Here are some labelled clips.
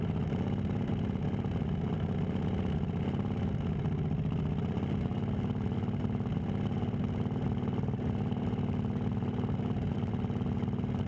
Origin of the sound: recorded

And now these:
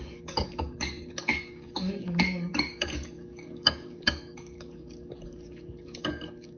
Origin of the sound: remade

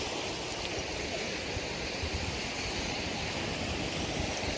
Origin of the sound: recorded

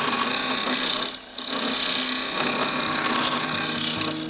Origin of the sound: recorded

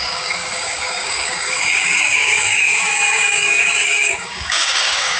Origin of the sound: remade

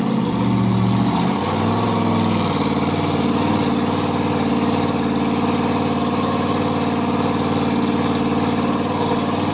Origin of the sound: recorded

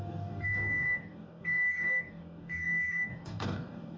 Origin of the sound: remade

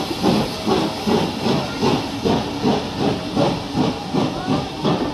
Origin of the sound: recorded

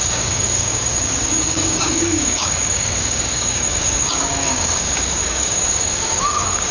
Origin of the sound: remade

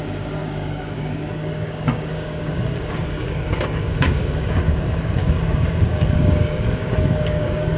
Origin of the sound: remade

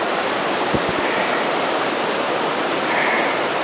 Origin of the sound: recorded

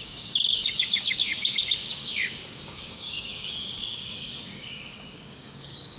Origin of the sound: remade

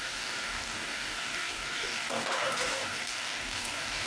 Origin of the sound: remade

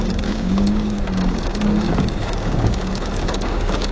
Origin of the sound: remade